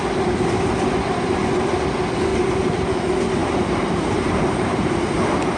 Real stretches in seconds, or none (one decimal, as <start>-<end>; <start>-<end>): 0.0-2.3; 2.8-3.4; 4.9-5.6